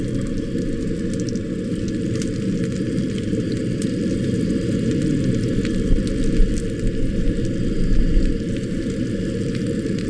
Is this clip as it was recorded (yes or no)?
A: yes